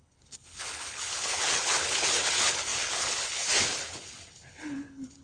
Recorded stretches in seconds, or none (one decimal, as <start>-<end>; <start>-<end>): none